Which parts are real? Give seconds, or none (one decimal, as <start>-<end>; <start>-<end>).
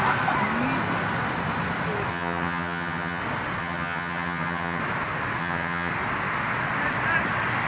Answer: 0.0-2.1; 3.2-3.6; 4.8-5.4; 5.9-7.7